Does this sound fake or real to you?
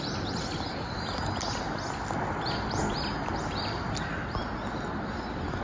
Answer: real